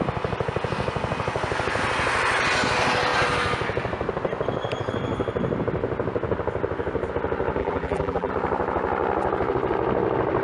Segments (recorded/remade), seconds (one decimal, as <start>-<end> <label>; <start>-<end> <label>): 0.0-7.6 recorded; 7.6-8.3 remade; 8.3-10.4 recorded